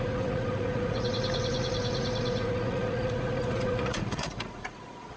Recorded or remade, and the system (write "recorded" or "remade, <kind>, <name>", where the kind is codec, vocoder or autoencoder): remade, vocoder, Vocos